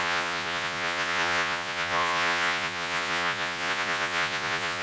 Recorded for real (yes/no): no